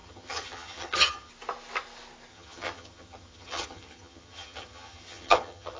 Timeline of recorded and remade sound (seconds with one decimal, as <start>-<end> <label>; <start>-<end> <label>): 0.0-1.3 remade; 1.3-2.3 recorded; 2.3-5.8 remade